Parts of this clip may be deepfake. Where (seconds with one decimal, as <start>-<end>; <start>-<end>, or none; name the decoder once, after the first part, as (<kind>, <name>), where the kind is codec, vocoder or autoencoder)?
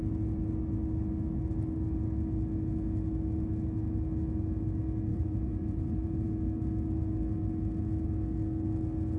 5.1-6.3 (vocoder, BigVGAN v2)